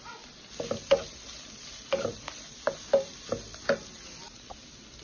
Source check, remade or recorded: remade